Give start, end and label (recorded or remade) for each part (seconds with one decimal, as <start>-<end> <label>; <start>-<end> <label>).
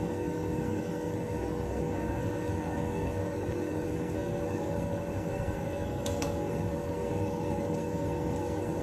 0.0-8.8 remade